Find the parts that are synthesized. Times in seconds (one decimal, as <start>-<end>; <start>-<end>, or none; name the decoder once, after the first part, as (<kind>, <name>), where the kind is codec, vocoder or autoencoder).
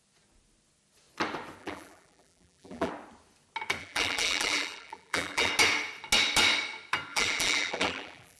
1.6-2.9 (vocoder, BigVGAN v2); 3.8-5.5; 7.1-8.4